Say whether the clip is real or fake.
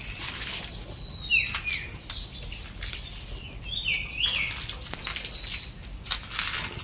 real